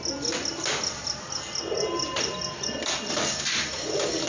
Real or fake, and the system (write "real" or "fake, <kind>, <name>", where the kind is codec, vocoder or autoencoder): real